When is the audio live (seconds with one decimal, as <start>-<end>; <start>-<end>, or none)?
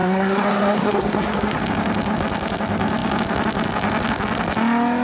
1.6-5.0